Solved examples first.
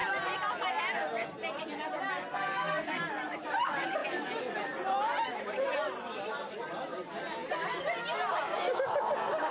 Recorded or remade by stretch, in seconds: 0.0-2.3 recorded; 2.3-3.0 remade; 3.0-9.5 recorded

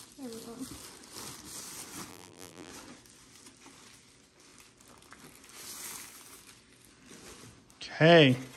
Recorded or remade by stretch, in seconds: 0.0-2.1 recorded; 2.1-2.7 remade; 2.7-8.6 recorded

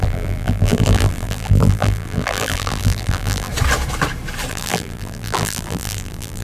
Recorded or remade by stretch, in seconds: 0.0-3.5 remade; 3.5-4.5 recorded; 4.5-6.4 remade